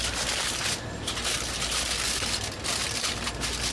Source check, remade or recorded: recorded